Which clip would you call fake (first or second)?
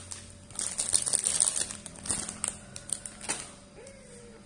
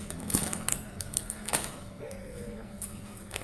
second